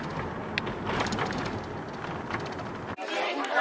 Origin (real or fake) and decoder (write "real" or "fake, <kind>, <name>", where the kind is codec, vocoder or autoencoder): real